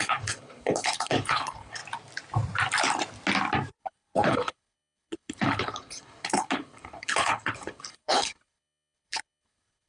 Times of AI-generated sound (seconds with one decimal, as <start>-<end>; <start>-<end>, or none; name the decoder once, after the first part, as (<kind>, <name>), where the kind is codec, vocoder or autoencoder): 0.0-1.8 (codec, HILCodec); 3.8-9.9